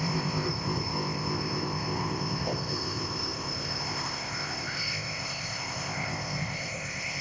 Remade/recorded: remade